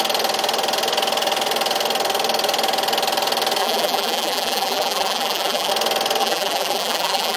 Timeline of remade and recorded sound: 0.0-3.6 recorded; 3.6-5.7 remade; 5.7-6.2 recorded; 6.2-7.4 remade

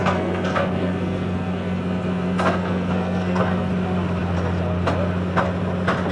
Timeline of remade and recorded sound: 0.0-3.7 remade; 3.7-6.1 recorded

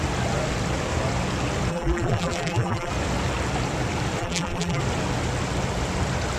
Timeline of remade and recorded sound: 0.0-1.7 recorded; 1.7-2.9 remade; 2.9-4.2 recorded; 4.2-4.8 remade; 4.8-6.4 recorded

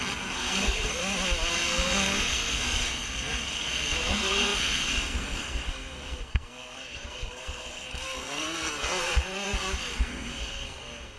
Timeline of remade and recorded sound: 0.0-1.0 remade; 1.0-1.5 recorded; 1.5-11.2 remade

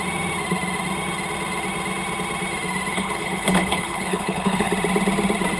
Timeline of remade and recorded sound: 0.0-2.9 recorded; 2.9-4.7 remade; 4.7-5.6 recorded